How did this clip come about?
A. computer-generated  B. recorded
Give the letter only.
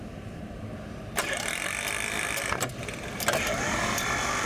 A